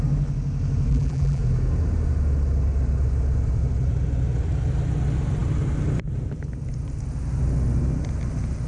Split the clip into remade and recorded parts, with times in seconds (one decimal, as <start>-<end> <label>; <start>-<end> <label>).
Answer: 0.0-0.9 recorded; 0.9-1.4 remade; 1.4-8.7 recorded